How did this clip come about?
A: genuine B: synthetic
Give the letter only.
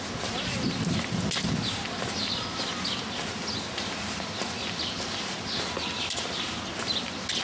A